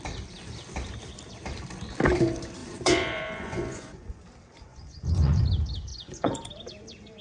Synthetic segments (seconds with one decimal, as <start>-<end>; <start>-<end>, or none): 2.6-4.2; 4.7-5.4; 5.9-6.5